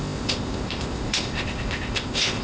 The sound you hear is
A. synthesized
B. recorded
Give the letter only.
A